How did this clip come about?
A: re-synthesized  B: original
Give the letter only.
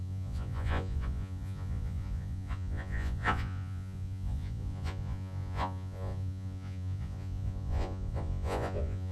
A